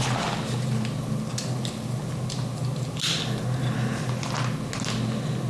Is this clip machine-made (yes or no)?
no